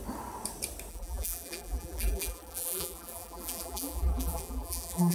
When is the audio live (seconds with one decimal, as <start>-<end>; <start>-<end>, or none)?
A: 0.0-0.9